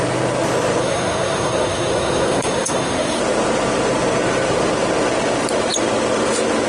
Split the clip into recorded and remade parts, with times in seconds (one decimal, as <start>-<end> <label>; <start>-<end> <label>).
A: 0.0-0.8 recorded; 0.8-3.2 remade; 3.2-6.7 recorded